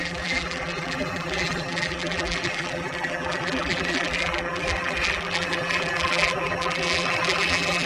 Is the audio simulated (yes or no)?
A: yes